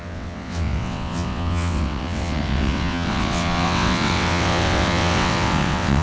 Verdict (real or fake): fake